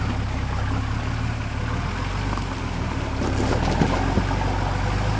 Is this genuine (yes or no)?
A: yes